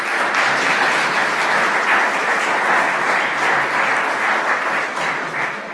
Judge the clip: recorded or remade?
recorded